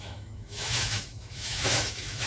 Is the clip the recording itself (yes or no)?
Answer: no